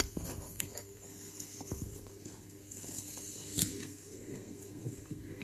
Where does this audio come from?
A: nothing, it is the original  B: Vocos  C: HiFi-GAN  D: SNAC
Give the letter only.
D